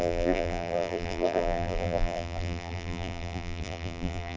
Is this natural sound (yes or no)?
no